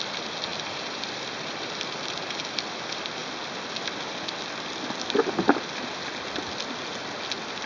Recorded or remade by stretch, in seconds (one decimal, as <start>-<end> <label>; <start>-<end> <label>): 0.0-0.5 recorded; 0.5-2.4 remade; 2.4-7.7 recorded